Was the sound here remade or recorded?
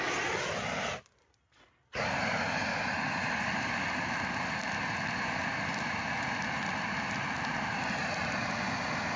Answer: recorded